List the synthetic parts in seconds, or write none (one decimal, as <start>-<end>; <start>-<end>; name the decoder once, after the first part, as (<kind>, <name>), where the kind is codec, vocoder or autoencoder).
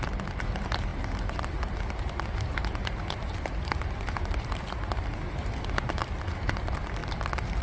none